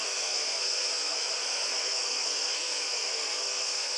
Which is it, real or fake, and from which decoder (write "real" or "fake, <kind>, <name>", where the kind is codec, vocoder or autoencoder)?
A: fake, codec, SNAC